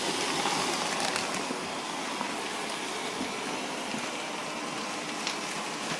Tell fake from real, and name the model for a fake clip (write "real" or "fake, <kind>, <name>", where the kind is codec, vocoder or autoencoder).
real